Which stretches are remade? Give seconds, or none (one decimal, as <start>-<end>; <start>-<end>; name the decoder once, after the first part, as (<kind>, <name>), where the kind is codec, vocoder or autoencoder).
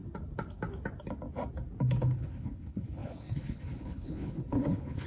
2.0-5.1 (codec, HILCodec)